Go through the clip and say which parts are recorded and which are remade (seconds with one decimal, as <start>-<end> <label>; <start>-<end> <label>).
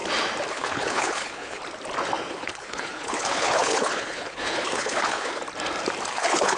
0.0-0.5 recorded; 0.5-1.6 remade; 1.6-2.3 recorded; 2.3-5.4 remade; 5.4-6.1 recorded; 6.1-6.6 remade